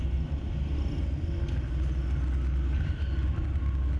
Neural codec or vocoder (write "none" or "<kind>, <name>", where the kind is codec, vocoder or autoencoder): none